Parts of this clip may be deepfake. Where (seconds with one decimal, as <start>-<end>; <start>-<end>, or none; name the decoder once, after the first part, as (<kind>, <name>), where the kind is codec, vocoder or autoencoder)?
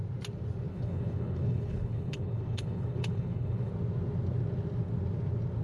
0.7-3.7 (codec, HILCodec)